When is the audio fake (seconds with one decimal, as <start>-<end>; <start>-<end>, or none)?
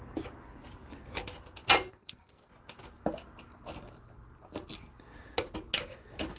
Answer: 1.9-2.5